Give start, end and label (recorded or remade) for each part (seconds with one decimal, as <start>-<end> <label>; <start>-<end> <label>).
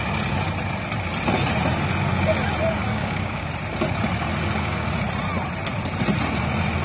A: 0.0-2.9 recorded; 2.9-3.5 remade; 3.5-6.8 recorded